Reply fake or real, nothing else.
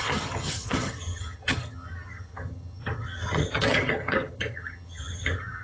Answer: fake